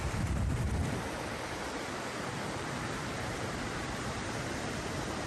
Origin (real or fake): fake